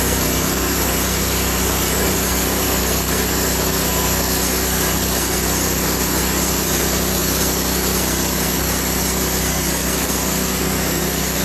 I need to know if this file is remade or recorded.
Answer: remade